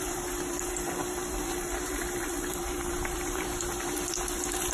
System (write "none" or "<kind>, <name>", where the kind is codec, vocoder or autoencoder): vocoder, BigVGAN v2